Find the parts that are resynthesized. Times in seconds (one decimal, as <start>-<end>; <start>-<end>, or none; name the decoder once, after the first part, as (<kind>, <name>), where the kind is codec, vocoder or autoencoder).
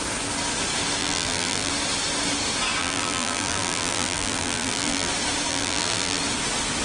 1.0-1.7 (vocoder, BigVGAN v2); 2.8-5.1; 5.5-6.2